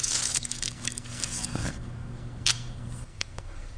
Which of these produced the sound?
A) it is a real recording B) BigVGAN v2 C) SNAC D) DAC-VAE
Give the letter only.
C